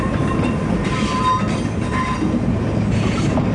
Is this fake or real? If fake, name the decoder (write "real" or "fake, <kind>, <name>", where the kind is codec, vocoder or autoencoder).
real